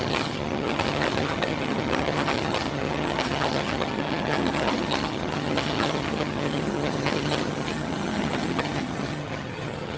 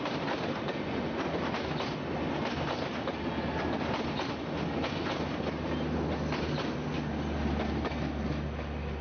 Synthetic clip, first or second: first